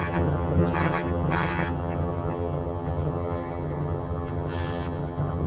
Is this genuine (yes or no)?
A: no